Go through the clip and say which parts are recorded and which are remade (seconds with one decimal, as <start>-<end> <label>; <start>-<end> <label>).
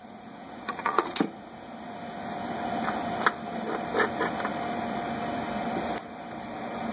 0.0-1.2 remade; 1.2-6.9 recorded